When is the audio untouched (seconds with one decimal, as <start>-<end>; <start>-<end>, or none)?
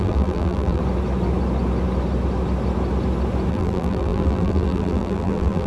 0.8-3.5